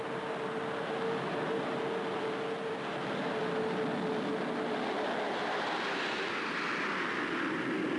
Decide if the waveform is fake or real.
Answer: real